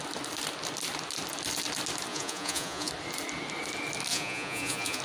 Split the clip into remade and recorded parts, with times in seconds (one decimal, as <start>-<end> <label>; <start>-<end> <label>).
0.0-2.1 recorded; 2.1-2.9 remade; 2.9-4.1 recorded; 4.1-5.0 remade